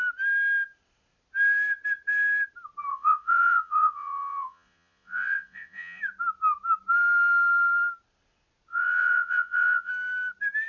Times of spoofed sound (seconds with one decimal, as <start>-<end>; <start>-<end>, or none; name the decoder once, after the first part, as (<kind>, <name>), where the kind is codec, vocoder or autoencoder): 2.9-6.0 (vocoder, Vocos); 8.7-9.9